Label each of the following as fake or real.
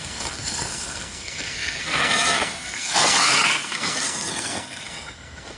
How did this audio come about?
fake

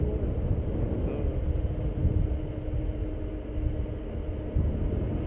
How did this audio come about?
real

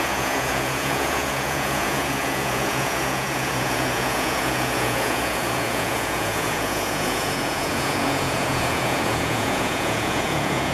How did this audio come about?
fake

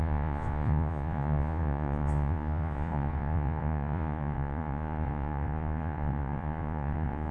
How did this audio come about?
fake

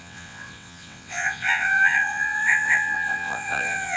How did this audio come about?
fake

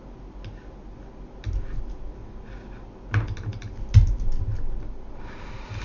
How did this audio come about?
real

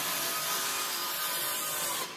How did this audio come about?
fake